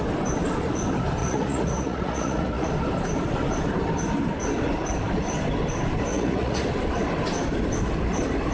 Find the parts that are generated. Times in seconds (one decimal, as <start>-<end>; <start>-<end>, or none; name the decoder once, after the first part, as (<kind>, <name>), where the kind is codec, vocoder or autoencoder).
1.2-2.7 (vocoder, Vocos); 6.1-6.6